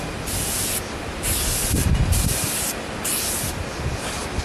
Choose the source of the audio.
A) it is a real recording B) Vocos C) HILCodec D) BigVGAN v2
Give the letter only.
D